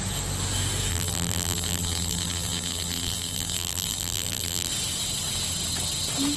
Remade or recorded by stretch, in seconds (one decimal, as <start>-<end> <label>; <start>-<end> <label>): 0.0-0.9 recorded; 0.9-4.7 remade; 4.7-6.4 recorded